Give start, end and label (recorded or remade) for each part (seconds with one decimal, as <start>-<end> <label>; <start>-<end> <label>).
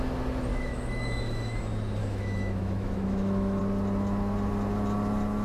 0.0-0.5 recorded; 0.5-1.6 remade; 1.6-2.0 recorded; 2.0-3.6 remade; 3.6-5.4 recorded